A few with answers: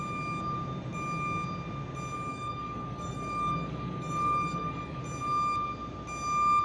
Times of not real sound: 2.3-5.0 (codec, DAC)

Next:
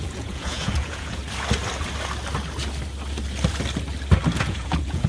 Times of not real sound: 0.0-1.2 (vocoder, Vocos); 4.3-5.1

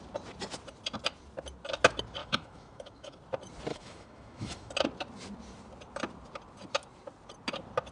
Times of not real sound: 2.2-3.2 (autoencoder, DAC-VAE); 3.7-4.7

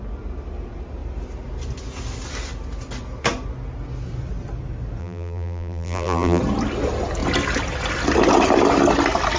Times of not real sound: 5.0-6.4 (vocoder, BigVGAN v2)

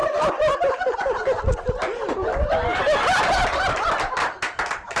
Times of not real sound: none

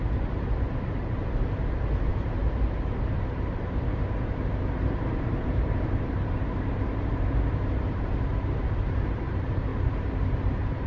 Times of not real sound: 0.0-10.9 (vocoder, BigVGAN v2)